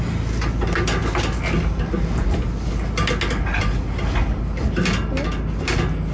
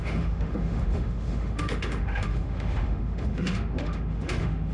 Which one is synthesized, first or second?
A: second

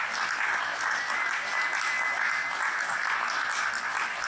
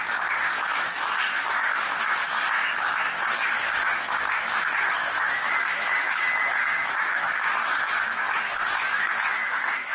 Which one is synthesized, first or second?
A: second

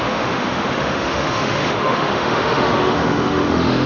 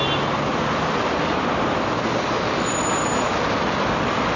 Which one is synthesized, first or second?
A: first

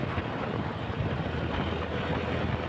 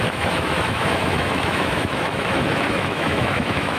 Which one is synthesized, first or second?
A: second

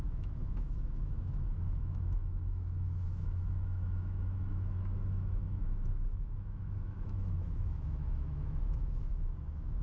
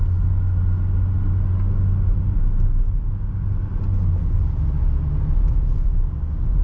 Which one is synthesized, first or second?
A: first